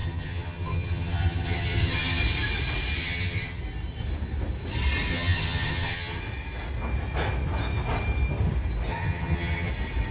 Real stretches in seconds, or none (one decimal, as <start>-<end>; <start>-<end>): 2.2-3.0; 3.6-5.1; 6.2-8.9; 9.7-10.1